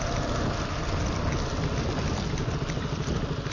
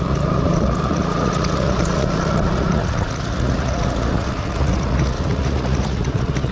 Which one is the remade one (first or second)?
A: second